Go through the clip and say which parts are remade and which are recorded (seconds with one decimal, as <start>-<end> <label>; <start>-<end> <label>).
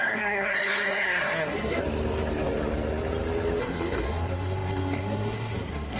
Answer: 0.0-1.8 remade; 1.8-3.6 recorded; 3.6-6.0 remade